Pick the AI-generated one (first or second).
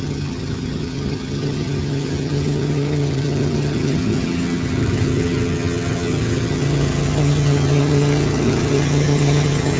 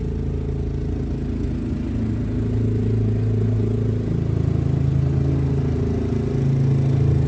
first